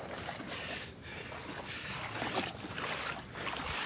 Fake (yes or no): no